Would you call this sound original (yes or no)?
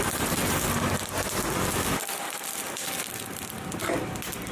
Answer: yes